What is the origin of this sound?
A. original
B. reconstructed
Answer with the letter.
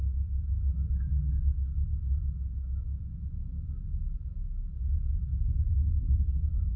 A